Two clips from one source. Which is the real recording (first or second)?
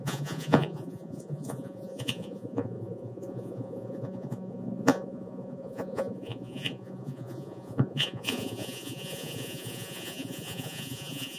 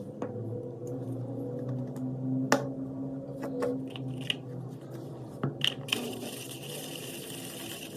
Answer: second